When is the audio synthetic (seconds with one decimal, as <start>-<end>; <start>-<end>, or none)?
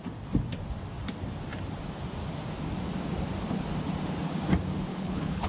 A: 4.9-5.5